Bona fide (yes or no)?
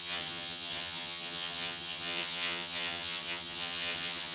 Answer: no